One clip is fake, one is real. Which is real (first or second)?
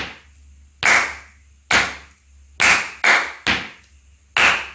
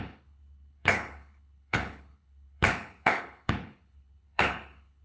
first